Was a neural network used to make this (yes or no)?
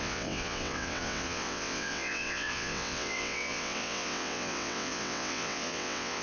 yes